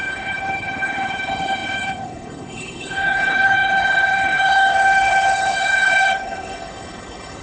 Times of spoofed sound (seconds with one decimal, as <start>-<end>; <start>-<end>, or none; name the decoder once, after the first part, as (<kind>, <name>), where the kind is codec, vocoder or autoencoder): 0.0-7.4 (codec, HILCodec)